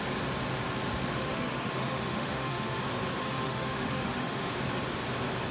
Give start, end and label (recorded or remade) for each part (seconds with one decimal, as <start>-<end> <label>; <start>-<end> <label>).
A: 0.0-1.1 recorded; 1.1-2.8 remade; 2.8-3.2 recorded; 3.2-4.5 remade; 4.5-5.5 recorded